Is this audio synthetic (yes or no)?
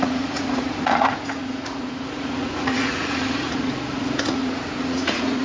yes